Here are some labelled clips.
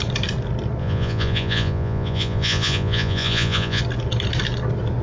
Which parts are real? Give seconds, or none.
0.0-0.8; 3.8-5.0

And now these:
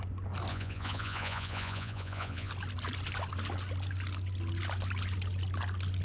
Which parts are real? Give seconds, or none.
0.0-0.5; 2.5-6.0

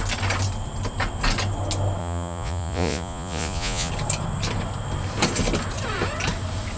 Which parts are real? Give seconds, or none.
0.0-2.0; 3.9-6.8

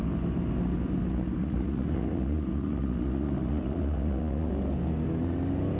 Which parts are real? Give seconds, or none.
0.0-1.4; 4.5-5.8

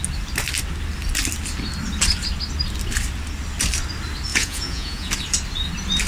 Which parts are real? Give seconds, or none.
0.0-4.3; 5.1-6.1

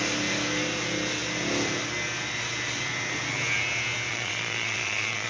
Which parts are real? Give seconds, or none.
0.0-4.1